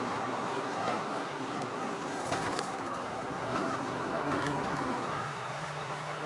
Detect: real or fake fake